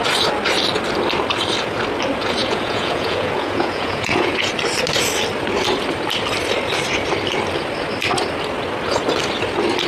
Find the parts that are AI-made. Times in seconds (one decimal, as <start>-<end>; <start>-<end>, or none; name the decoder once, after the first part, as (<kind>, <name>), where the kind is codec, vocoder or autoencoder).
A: 2.4-4.5 (vocoder, Vocos)

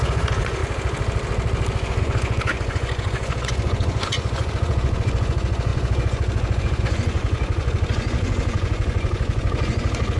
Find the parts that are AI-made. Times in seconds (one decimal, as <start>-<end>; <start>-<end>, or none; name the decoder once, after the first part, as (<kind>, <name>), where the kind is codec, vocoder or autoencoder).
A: 0.0-0.6 (vocoder, Vocos); 2.0-10.2

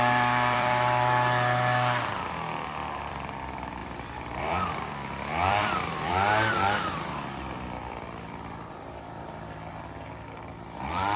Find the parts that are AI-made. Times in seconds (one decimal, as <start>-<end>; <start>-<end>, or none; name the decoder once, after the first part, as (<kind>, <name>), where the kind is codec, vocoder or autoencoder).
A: 0.0-11.2 (vocoder, BigVGAN v2)